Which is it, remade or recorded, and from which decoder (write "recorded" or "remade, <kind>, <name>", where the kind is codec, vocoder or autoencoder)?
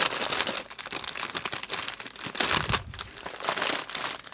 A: recorded